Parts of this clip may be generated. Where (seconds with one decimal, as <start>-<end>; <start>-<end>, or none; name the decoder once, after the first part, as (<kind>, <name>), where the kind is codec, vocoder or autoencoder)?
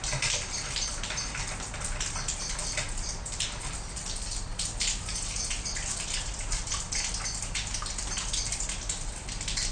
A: none